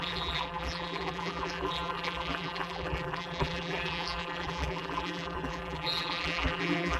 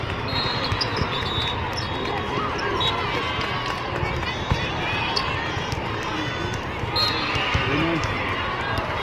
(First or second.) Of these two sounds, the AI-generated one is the first